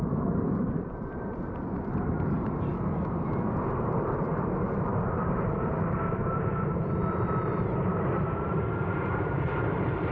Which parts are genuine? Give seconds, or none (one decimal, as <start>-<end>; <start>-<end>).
2.7-3.9